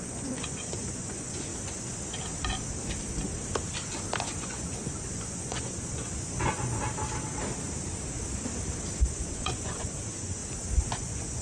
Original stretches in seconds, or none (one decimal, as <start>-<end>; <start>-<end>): 1.5-4.3; 6.7-9.1; 10.4-10.9